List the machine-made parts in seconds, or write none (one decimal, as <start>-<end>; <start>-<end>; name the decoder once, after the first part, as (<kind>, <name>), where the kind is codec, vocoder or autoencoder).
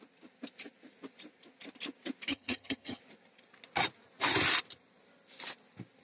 2.3-3.0 (vocoder, HiFi-GAN)